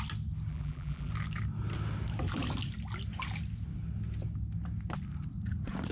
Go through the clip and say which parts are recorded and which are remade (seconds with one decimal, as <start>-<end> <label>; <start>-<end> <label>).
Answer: 0.0-0.5 recorded; 0.5-1.1 remade; 1.1-5.9 recorded